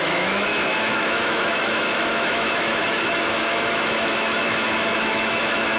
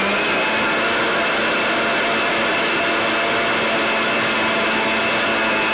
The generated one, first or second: first